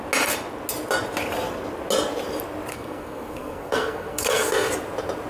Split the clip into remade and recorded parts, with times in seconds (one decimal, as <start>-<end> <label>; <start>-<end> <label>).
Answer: 0.0-2.7 recorded; 2.7-4.7 remade; 4.7-5.3 recorded